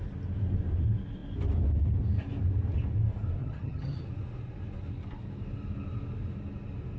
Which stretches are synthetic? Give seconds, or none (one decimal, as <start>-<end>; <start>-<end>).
3.4-4.0